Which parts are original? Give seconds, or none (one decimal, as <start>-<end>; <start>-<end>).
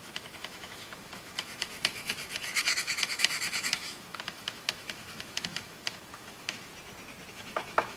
6.7-7.3